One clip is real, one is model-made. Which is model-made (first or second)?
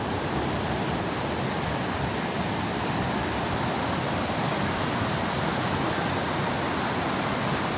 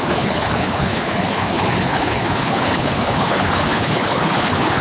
second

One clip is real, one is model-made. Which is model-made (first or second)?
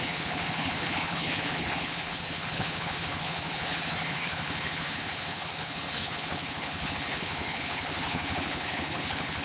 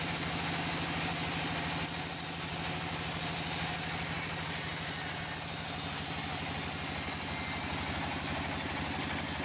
first